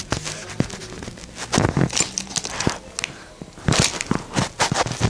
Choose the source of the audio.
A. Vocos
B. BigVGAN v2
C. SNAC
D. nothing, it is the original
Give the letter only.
D